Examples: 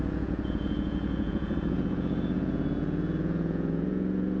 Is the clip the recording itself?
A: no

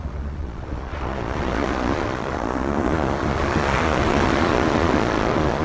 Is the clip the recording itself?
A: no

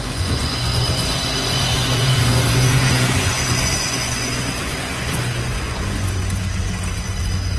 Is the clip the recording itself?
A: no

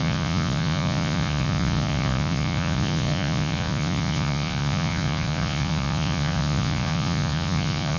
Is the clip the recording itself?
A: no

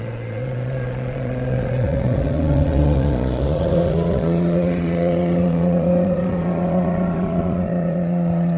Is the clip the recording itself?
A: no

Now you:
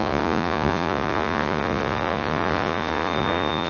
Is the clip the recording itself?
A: no